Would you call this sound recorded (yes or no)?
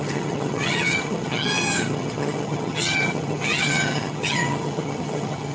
no